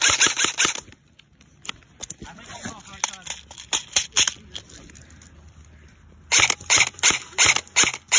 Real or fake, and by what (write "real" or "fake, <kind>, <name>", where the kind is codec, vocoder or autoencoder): real